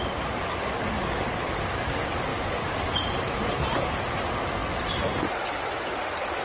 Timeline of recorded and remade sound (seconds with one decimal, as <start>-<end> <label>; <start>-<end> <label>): 0.0-2.3 recorded; 2.3-3.2 remade; 3.2-6.4 recorded